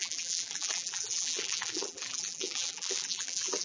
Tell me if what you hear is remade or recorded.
remade